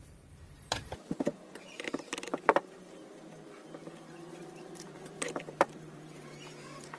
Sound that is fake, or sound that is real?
fake